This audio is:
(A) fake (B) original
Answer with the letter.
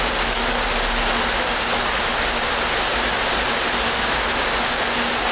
B